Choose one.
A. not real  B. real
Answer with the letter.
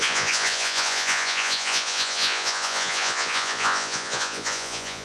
A